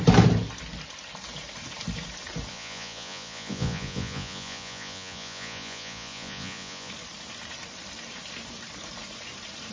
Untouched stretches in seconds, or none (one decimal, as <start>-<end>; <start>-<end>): 0.0-2.5; 6.9-9.7